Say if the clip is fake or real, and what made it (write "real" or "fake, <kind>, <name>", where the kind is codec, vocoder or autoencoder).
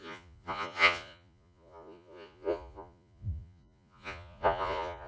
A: fake, vocoder, Vocos